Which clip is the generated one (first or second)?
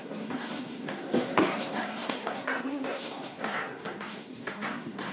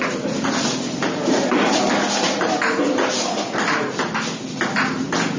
first